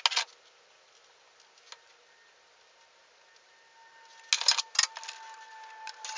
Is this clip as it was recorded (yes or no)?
yes